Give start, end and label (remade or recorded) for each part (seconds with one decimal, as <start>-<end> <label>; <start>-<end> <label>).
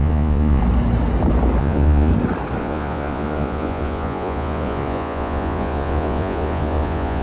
0.0-0.6 remade; 0.6-1.6 recorded; 1.6-2.1 remade; 2.1-2.6 recorded; 2.6-7.2 remade